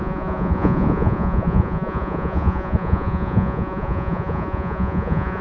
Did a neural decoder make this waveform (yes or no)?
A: yes